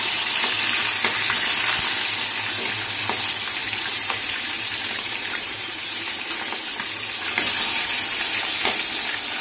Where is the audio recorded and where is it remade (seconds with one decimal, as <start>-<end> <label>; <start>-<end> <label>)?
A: 0.0-3.6 recorded; 3.6-6.2 remade; 6.2-9.4 recorded